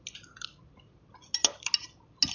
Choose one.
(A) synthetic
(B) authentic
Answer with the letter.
B